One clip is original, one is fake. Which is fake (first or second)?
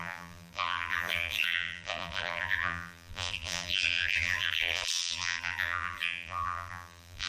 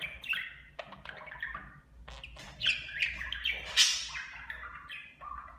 first